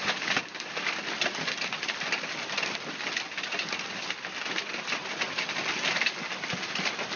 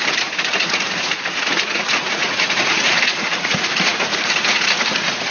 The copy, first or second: second